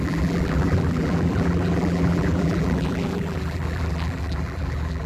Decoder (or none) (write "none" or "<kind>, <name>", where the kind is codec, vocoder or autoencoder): vocoder, BigVGAN v2